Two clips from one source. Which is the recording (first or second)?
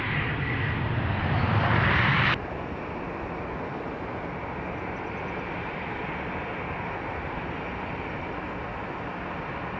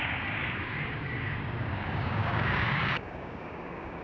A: first